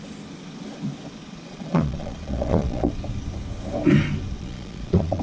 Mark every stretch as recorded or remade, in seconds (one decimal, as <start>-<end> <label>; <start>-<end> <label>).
0.0-1.2 recorded; 1.2-2.9 remade; 2.9-4.3 recorded; 4.3-5.2 remade